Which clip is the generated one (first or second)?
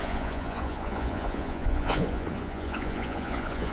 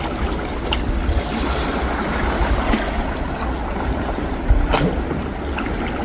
first